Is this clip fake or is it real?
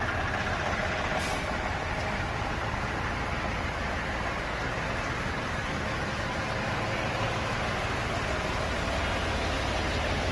real